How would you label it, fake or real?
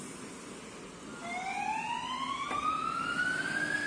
real